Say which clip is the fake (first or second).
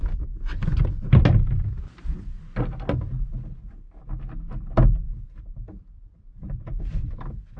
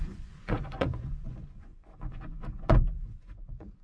second